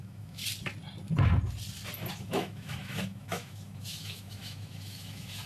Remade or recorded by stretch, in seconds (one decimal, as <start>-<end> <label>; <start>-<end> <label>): 0.0-0.4 remade; 0.4-2.1 recorded; 2.1-5.5 remade

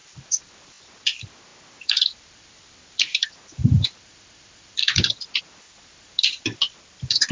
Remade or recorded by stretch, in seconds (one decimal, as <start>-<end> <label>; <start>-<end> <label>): 0.0-0.5 remade; 0.5-7.3 recorded

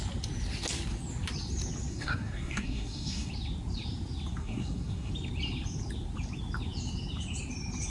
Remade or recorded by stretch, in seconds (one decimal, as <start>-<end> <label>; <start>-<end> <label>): 0.0-1.9 recorded; 1.9-3.3 remade; 3.3-4.4 recorded; 4.4-5.1 remade; 5.1-7.9 recorded

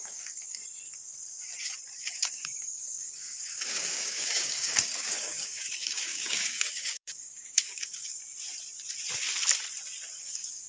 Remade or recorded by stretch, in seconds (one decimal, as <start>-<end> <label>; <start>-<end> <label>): 0.0-0.6 remade; 0.6-2.0 recorded; 2.0-8.2 remade; 8.2-10.2 recorded; 10.2-10.7 remade

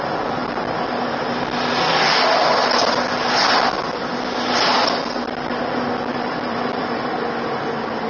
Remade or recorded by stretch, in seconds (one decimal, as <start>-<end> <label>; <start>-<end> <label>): 0.0-6.1 recorded; 6.1-7.1 remade; 7.1-8.1 recorded

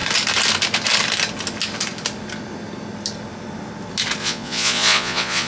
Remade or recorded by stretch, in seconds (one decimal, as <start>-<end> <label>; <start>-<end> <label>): 0.0-4.2 recorded; 4.2-5.5 remade

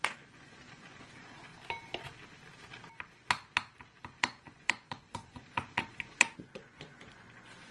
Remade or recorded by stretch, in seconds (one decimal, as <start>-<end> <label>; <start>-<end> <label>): 0.0-1.5 remade; 1.5-4.2 recorded; 4.2-7.7 remade